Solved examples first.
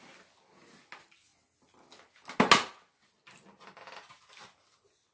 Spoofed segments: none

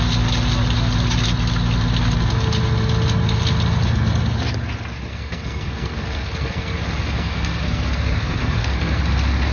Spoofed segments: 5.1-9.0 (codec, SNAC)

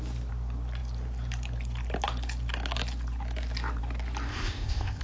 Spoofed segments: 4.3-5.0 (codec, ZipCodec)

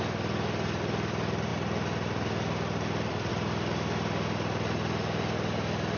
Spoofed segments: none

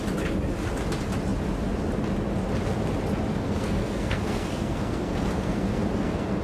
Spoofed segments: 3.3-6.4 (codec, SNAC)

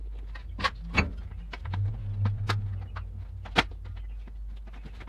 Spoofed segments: 1.3-1.9 (vocoder, BigVGAN v2)

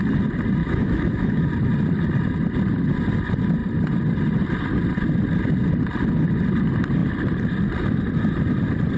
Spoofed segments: 0.6-1.5 (autoencoder, DAC-VAE)